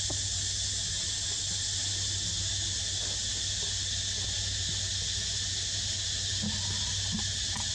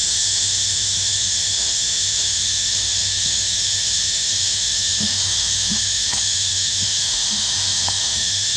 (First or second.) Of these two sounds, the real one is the first